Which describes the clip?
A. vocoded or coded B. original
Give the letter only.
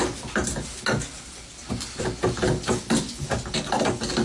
B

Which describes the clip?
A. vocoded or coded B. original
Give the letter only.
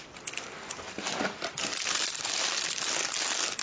B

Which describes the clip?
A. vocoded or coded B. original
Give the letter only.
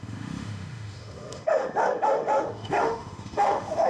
A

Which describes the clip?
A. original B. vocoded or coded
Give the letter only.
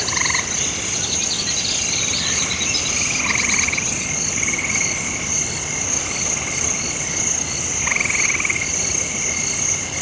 A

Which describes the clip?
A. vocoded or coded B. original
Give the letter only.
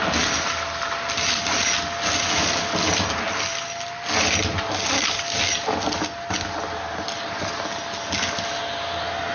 B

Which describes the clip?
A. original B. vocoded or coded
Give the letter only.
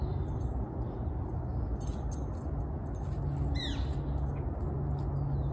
A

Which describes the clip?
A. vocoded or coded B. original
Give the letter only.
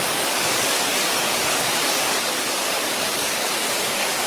A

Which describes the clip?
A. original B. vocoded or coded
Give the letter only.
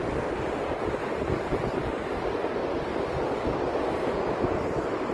A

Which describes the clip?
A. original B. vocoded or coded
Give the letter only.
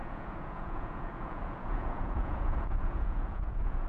B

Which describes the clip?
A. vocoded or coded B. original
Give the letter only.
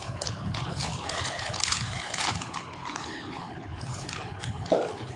A